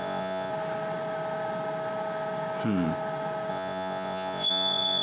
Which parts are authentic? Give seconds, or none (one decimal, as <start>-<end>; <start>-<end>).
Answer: 0.5-3.5